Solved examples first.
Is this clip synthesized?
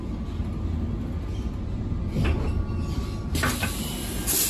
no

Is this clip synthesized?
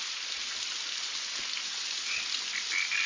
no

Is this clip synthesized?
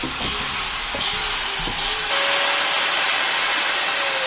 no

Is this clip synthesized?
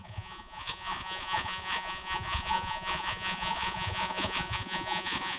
yes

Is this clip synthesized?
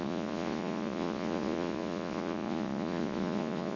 yes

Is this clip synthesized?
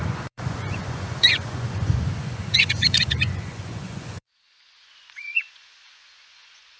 yes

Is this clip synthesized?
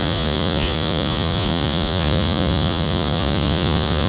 yes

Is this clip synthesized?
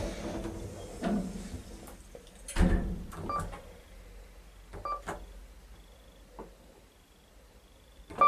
no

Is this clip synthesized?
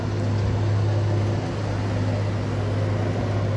no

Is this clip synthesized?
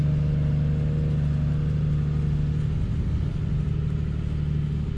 no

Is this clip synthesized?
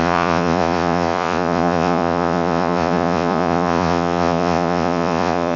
yes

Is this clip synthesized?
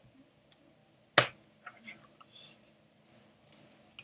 no